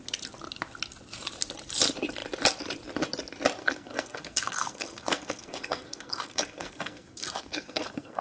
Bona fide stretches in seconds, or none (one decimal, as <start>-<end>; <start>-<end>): 0.0-3.6